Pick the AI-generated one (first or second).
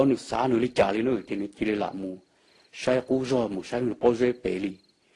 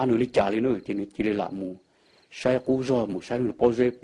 second